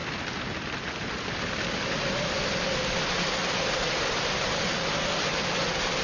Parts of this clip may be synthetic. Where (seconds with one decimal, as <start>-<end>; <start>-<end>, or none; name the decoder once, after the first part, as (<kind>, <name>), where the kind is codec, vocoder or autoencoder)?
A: none